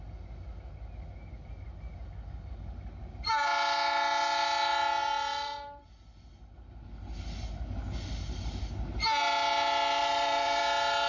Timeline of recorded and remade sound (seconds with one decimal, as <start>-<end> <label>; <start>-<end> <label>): 0.0-5.0 recorded; 5.0-5.9 remade; 5.9-10.0 recorded; 10.0-10.6 remade; 10.6-11.1 recorded